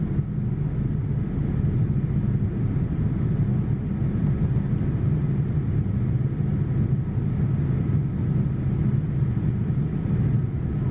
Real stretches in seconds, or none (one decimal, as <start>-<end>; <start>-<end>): 0.0-10.9